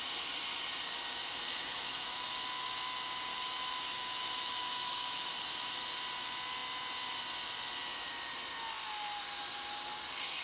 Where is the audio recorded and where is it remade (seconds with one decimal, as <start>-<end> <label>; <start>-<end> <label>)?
0.0-1.2 recorded; 1.2-2.3 remade; 2.3-3.3 recorded; 3.3-5.3 remade; 5.3-10.4 recorded